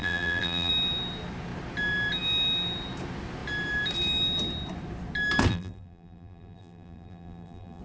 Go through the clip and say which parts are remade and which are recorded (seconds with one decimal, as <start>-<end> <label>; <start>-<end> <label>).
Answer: 0.0-0.7 remade; 0.7-5.5 recorded; 5.5-7.8 remade